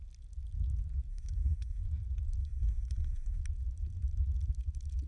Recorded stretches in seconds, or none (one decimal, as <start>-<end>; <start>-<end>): 0.0-1.1; 1.8-2.4; 3.4-5.1